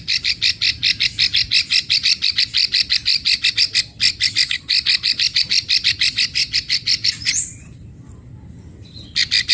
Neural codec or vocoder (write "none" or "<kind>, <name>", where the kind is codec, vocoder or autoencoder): none